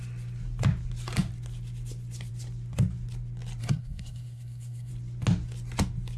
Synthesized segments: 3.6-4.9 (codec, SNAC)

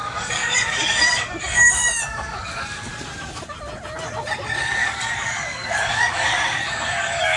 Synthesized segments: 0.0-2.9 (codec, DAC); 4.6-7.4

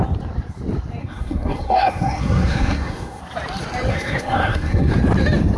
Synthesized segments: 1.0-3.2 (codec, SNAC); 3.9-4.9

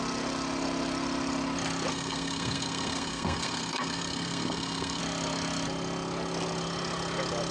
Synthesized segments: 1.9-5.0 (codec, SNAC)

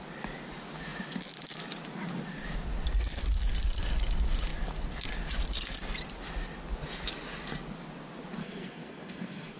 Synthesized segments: 8.4-9.6 (codec, SNAC)

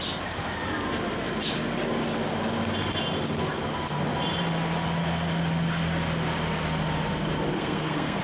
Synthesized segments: 7.5-8.2 (codec, SNAC)